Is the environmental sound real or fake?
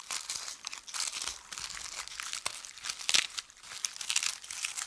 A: real